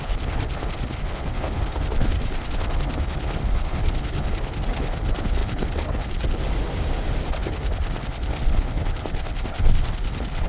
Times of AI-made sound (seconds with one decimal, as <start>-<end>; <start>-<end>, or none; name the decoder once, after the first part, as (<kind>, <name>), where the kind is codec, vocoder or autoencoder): 0.0-6.4 (codec, HILCodec); 7.3-10.5